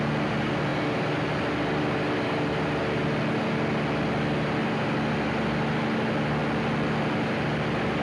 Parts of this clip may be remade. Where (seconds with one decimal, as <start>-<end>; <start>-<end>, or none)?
none